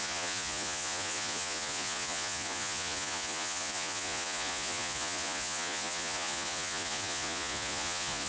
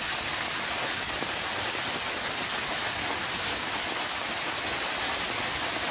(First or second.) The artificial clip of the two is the first